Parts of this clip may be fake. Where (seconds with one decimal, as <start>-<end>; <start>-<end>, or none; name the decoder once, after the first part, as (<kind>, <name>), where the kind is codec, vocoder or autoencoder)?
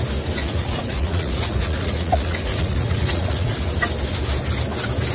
0.4-3.5 (vocoder, Vocos)